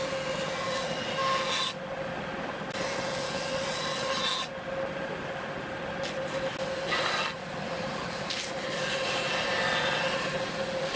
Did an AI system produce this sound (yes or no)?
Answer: no